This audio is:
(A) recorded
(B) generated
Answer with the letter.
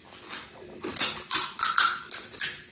A